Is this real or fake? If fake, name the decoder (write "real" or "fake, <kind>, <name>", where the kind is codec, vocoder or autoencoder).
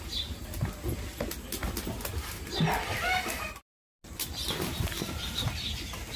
real